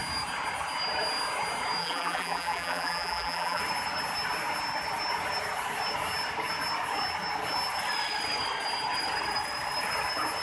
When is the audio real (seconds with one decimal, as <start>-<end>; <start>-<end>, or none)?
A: 0.0-1.8; 3.6-10.4